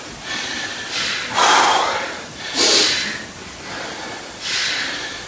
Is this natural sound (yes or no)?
no